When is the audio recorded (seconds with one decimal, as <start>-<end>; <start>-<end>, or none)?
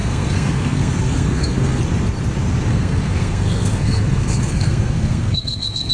1.8-2.7